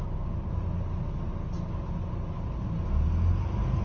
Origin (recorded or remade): recorded